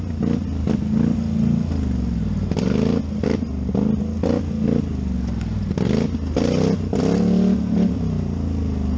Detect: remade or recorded recorded